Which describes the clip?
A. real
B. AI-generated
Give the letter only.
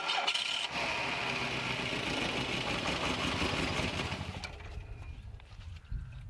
A